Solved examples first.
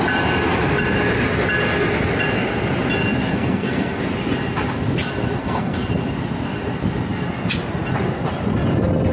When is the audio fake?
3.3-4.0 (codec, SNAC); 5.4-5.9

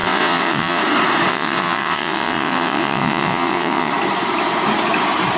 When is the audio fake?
0.0-0.8 (vocoder, WaveNeXt); 1.3-3.9

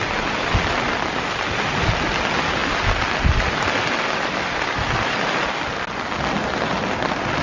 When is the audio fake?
none

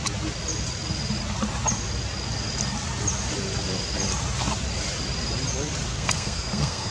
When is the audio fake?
5.9-6.9 (codec, SNAC)

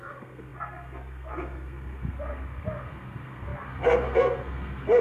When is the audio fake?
0.0-5.0 (codec, SNAC)

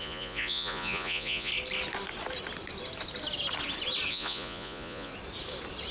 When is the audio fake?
0.0-1.5 (vocoder, Vocos); 4.1-5.1